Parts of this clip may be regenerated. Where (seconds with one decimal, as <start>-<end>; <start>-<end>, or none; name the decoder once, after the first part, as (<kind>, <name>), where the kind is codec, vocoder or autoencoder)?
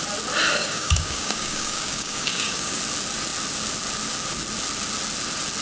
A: 0.6-2.8 (codec, DAC)